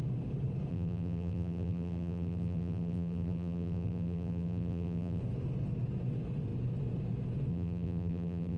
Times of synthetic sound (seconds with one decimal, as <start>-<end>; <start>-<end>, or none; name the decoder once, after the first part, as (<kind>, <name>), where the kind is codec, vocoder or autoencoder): 0.7-5.2 (vocoder, BigVGAN v2); 7.5-8.6